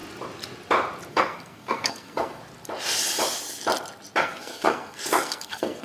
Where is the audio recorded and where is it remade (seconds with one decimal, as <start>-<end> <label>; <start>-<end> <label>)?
0.0-1.1 recorded; 1.1-2.4 remade; 2.4-4.2 recorded; 4.2-5.8 remade